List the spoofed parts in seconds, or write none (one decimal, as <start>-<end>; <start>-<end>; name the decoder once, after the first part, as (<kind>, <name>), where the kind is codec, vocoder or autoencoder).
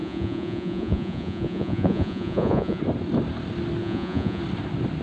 0.0-2.8 (vocoder, Vocos); 3.8-4.4